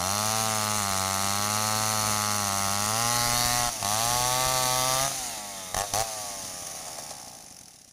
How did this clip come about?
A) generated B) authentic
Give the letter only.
B